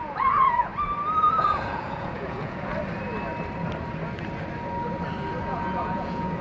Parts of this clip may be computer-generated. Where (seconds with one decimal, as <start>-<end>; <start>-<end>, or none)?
0.0-0.7; 1.3-2.7; 5.4-6.4

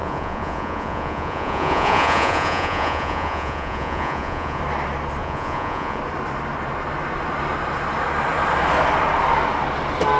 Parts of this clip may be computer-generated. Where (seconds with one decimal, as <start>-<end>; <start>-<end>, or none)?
0.0-4.6; 5.2-6.0

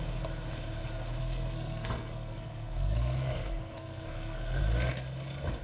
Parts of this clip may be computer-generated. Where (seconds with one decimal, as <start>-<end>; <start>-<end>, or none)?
1.2-4.6

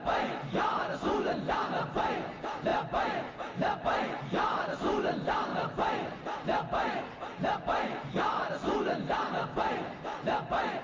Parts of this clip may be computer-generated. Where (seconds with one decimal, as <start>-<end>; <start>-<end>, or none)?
none

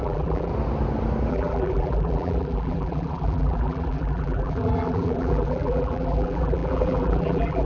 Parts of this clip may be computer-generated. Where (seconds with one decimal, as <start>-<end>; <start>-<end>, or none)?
0.0-0.5; 1.3-7.6

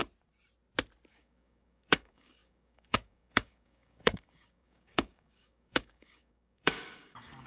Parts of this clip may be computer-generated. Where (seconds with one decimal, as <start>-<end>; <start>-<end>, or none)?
1.1-7.5

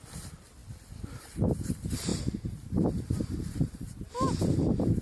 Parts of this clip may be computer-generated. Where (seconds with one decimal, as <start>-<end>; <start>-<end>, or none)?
2.1-4.1